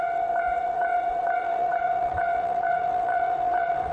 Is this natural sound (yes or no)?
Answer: no